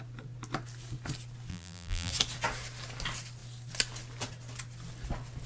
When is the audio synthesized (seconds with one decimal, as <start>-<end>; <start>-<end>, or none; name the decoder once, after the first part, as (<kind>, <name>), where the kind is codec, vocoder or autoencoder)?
1.5-2.1 (vocoder, BigVGAN v2)